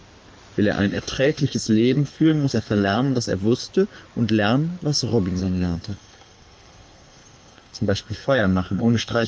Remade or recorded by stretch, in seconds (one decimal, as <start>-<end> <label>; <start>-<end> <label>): 0.0-0.8 recorded; 0.8-3.3 remade; 3.3-5.4 recorded; 5.4-9.3 remade